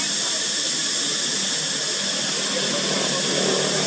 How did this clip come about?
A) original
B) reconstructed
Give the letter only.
A